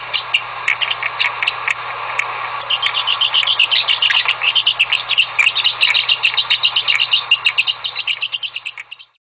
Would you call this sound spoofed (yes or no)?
no